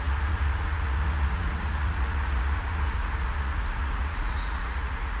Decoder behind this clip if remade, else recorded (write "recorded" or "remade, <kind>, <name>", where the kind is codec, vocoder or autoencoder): remade, vocoder, Vocos